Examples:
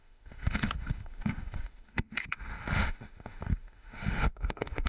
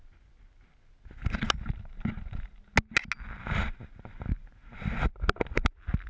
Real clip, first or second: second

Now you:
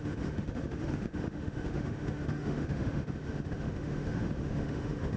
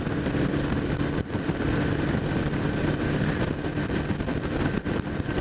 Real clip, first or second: second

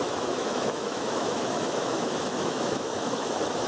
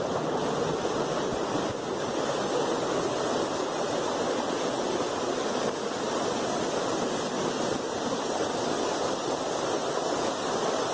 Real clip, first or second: second